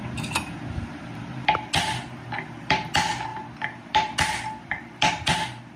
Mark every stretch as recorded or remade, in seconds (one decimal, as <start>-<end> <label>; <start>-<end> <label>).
0.0-5.8 recorded